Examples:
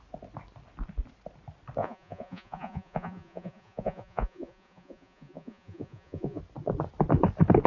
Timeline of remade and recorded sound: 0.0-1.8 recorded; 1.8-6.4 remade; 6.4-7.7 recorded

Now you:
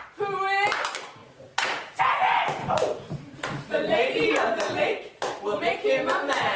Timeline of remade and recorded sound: 0.0-1.2 recorded; 1.2-2.0 remade; 2.0-2.6 recorded; 2.6-5.6 remade; 5.6-6.6 recorded